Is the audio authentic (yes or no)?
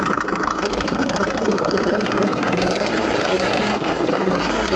no